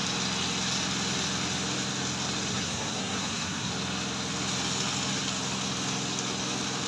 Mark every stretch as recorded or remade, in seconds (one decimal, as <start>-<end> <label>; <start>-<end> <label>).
0.0-2.5 recorded; 2.5-3.7 remade; 3.7-6.9 recorded